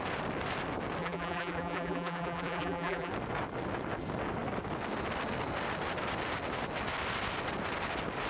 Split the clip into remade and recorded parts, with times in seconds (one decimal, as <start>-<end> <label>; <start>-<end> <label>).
0.0-1.0 recorded; 1.0-3.1 remade; 3.1-8.3 recorded